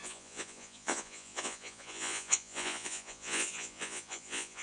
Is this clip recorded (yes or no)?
no